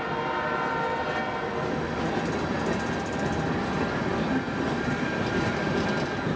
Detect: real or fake real